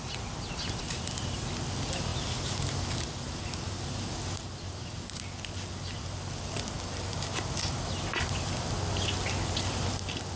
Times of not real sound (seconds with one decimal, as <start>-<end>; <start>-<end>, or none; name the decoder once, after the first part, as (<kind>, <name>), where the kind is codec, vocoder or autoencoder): none